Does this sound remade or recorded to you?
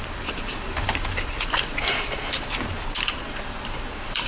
remade